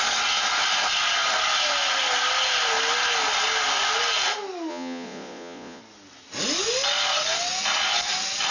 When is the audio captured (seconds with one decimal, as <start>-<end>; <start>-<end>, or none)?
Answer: 0.0-4.7; 5.8-8.5